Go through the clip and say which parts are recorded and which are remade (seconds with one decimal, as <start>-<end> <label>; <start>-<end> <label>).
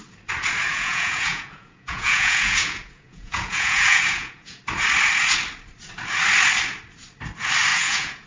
0.0-0.7 recorded; 0.7-4.6 remade; 4.6-7.7 recorded; 7.7-8.3 remade